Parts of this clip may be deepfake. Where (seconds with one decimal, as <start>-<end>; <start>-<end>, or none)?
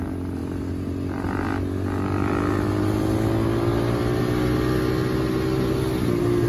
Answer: none